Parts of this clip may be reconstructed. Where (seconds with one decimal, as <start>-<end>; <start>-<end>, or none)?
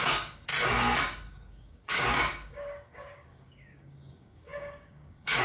0.0-0.5; 1.0-5.4